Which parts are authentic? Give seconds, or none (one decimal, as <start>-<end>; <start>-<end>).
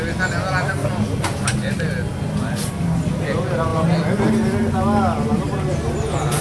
0.0-0.8; 1.9-6.4